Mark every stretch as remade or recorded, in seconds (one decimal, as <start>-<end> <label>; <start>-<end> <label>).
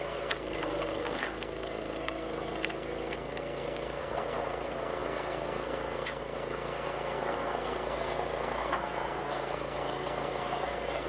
0.0-11.1 remade